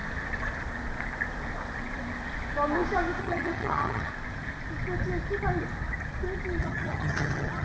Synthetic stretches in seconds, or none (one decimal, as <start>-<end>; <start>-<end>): 3.2-4.1; 6.6-7.6